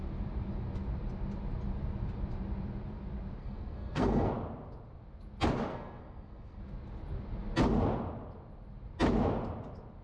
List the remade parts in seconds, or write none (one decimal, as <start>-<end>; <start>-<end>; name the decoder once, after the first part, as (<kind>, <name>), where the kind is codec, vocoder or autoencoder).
3.4-4.3 (codec, SNAC); 5.7-6.6